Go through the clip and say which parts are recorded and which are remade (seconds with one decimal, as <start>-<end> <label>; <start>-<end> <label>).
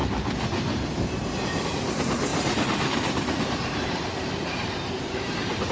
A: 0.0-5.7 remade